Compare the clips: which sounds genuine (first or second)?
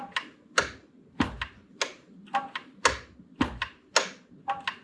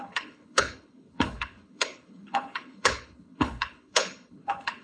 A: first